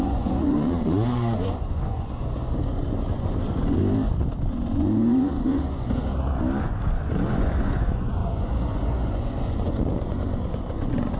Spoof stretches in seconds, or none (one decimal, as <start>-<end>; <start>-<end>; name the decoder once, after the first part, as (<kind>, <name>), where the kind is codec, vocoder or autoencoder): 0.0-3.8 (vocoder, Vocos); 4.5-6.1; 6.6-11.2